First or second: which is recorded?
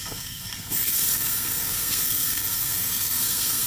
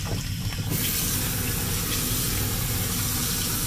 second